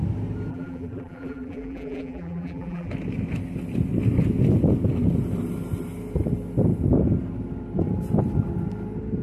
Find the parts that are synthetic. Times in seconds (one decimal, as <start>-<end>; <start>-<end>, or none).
0.5-2.9